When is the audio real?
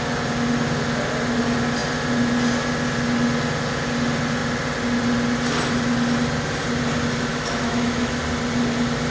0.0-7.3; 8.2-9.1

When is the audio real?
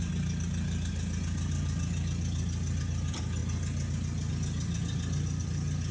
0.0-5.9